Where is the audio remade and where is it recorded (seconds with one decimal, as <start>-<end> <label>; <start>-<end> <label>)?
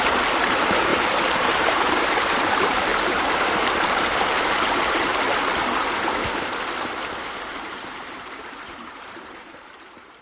0.0-2.9 remade; 2.9-3.8 recorded; 3.8-5.1 remade; 5.1-7.5 recorded; 7.5-10.2 remade